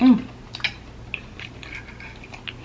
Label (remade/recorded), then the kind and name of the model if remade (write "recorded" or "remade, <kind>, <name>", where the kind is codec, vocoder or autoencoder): recorded